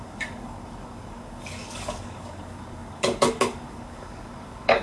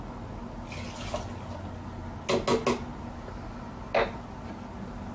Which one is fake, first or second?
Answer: first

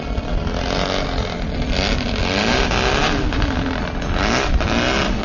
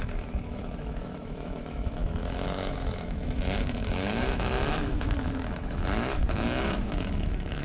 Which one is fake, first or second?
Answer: second